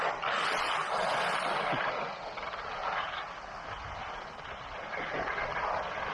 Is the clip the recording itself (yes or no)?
yes